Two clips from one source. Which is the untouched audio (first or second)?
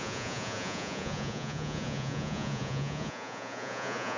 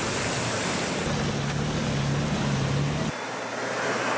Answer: second